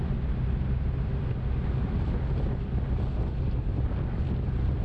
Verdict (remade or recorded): recorded